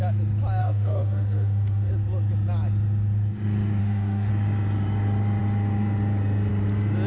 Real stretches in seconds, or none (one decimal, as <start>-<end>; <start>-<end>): 0.0-0.6; 1.9-3.8; 4.3-7.1